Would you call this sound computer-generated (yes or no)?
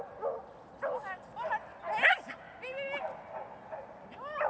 no